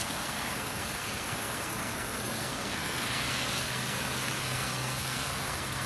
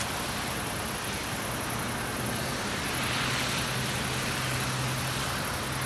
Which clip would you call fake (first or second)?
first